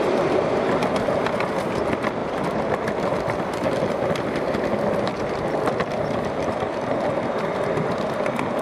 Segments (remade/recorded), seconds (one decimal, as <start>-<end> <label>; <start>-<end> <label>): 0.0-8.6 recorded